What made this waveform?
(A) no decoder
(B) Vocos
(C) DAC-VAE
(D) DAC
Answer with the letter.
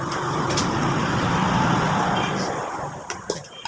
A